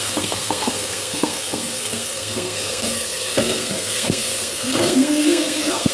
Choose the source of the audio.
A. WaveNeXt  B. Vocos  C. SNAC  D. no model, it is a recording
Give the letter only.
C